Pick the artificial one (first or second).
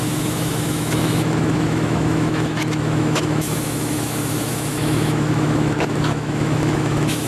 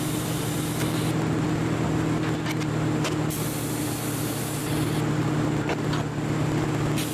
first